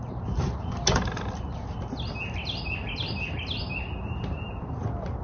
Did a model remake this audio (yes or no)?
no